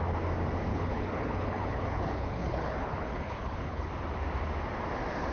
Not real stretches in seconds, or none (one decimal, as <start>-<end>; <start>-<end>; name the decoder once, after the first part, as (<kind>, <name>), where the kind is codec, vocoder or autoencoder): 0.7-3.9 (codec, HILCodec)